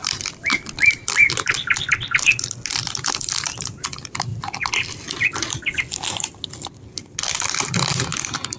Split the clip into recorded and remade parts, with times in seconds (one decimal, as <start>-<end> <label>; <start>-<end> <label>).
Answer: 0.0-1.5 remade; 1.5-4.3 recorded; 4.3-5.6 remade; 5.6-8.6 recorded